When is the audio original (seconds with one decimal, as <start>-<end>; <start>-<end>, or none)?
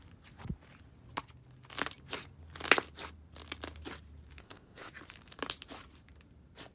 0.0-4.4; 4.9-6.7